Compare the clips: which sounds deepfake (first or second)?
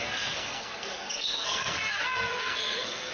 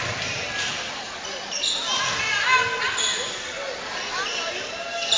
first